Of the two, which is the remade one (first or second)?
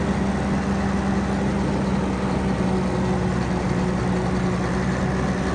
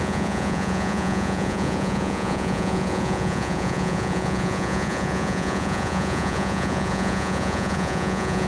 second